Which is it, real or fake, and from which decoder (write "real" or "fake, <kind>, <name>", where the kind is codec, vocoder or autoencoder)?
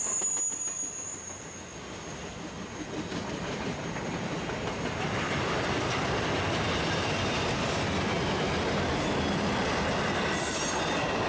real